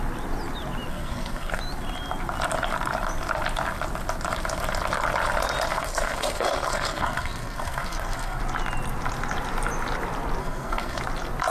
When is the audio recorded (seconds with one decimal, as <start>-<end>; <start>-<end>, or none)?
0.0-0.9; 1.6-5.7; 8.4-10.4; 11.0-11.5